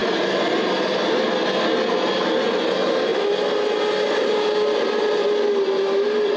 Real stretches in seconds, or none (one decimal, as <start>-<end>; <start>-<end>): 0.0-6.4